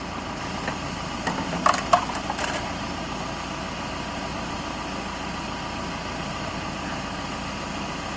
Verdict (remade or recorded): recorded